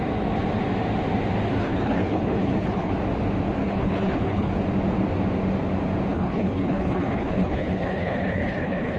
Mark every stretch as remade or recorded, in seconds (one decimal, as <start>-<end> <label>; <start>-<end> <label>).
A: 0.0-1.6 recorded; 1.6-2.9 remade; 2.9-3.6 recorded; 3.6-4.5 remade; 4.5-6.1 recorded; 6.1-9.0 remade